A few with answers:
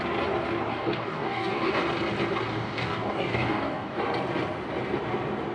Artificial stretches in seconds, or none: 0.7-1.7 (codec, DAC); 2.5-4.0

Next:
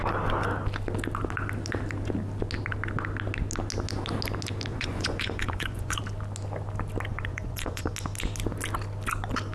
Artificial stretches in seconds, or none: 4.7-6.0 (vocoder, Vocos); 7.1-7.9

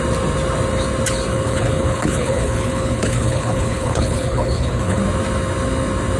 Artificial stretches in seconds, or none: 1.3-5.0 (codec, HILCodec)

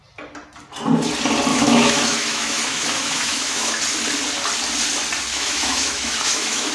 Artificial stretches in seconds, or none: 1.5-3.8 (autoencoder, DAC-VAE); 5.3-6.7

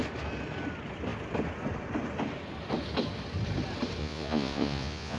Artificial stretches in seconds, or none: 4.0-5.2 (vocoder, Vocos)

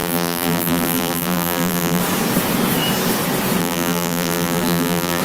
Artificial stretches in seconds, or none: 0.0-2.0 (vocoder, BigVGAN v2); 3.6-5.2

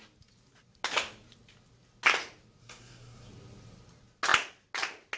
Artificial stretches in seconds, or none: 2.6-3.3 (codec, SNAC)